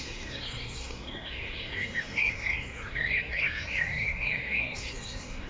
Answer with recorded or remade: remade